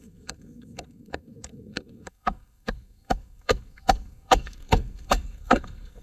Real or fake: fake